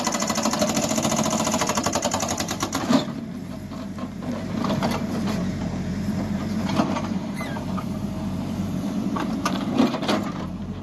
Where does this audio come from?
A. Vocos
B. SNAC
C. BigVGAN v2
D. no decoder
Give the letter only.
C